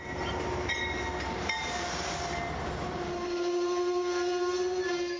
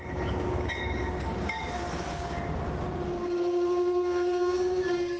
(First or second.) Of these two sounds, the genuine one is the first